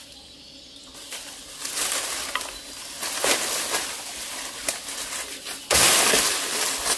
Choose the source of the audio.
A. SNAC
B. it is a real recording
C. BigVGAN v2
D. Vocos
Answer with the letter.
B